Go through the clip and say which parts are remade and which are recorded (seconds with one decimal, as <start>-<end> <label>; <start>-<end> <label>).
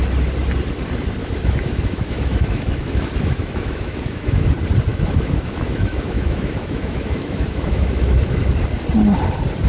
0.0-1.2 recorded; 1.2-4.5 remade; 4.5-4.9 recorded; 4.9-8.4 remade; 8.4-9.7 recorded